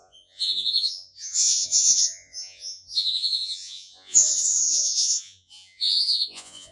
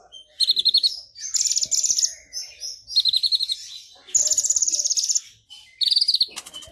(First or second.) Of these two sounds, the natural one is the second